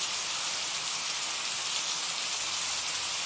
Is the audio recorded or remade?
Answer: recorded